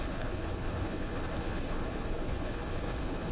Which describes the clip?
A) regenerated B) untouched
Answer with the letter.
A